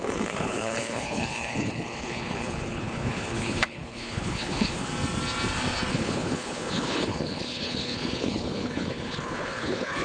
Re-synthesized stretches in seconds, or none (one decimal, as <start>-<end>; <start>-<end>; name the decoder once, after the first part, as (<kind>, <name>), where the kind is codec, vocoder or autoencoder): 0.0-4.9 (codec, HILCodec); 5.9-10.0